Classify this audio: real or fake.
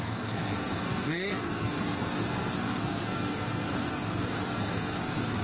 fake